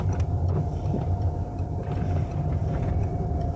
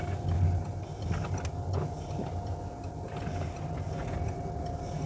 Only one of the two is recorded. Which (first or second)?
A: second